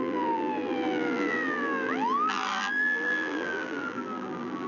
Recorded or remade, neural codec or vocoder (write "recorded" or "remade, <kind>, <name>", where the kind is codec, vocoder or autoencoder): remade, vocoder, BigVGAN v2